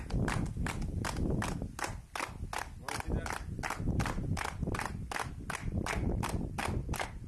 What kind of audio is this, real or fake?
real